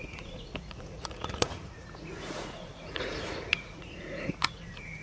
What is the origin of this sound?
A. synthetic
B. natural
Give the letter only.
A